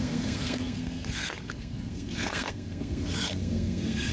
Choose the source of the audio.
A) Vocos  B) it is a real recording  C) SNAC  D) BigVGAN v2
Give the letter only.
C